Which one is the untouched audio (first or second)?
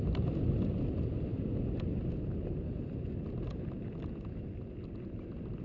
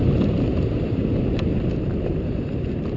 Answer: first